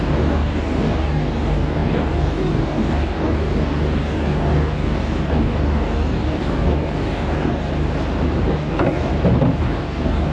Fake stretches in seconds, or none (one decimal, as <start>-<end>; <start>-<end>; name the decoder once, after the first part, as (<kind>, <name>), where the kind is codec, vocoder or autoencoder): 0.0-7.7 (codec, DAC); 8.5-9.1; 9.6-10.3